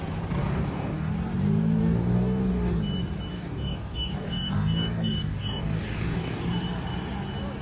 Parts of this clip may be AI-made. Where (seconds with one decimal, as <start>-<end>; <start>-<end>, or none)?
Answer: 0.4-1.1; 1.8-2.8; 3.3-6.4